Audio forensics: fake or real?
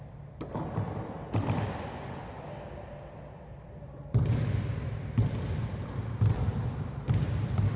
real